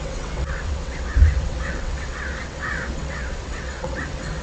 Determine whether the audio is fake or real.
fake